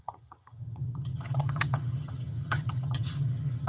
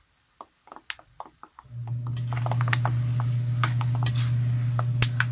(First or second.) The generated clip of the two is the first